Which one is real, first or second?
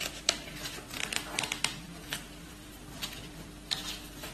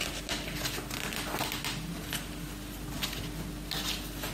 second